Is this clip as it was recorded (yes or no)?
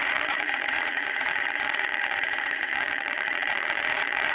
no